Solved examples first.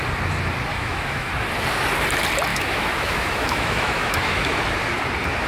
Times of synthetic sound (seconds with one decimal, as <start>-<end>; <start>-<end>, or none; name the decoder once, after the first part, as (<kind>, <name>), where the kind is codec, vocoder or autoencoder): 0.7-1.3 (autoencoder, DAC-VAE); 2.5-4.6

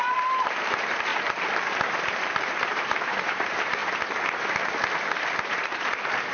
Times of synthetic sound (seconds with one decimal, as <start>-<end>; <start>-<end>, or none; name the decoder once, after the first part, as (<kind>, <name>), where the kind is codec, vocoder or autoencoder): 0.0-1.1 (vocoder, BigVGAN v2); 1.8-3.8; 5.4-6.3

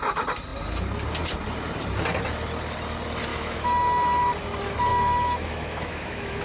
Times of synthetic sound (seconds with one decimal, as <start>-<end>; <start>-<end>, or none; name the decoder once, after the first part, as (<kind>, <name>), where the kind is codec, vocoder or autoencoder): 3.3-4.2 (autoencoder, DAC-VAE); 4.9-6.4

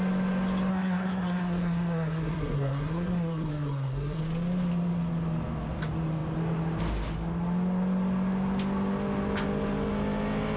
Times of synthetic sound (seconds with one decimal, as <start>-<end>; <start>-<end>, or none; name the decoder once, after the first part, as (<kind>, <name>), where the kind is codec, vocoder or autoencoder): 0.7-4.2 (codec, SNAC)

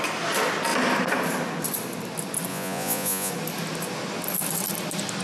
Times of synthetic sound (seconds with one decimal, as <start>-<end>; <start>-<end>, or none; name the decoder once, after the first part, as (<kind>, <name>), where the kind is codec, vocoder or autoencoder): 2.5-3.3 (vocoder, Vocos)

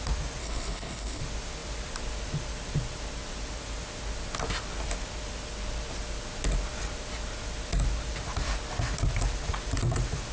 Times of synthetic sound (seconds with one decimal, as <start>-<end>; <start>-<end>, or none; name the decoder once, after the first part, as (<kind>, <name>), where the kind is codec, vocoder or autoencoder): 0.4-1.2 (codec, HILCodec)

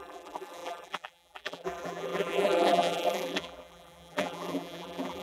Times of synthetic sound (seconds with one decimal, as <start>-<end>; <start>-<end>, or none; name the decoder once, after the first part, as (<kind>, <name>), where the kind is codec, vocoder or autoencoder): 0.0-5.2 (vocoder, BigVGAN v2)